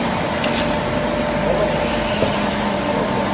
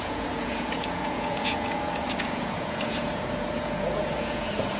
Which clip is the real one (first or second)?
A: first